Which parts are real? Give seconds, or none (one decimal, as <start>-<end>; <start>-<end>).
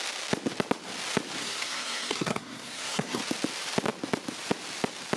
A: 0.0-1.4; 3.2-5.2